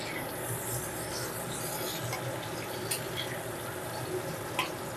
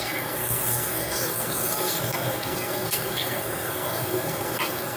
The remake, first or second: second